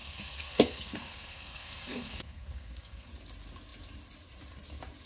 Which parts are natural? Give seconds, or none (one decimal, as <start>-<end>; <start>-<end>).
3.1-5.1